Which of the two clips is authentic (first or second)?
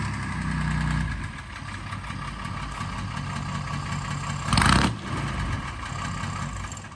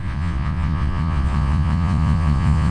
first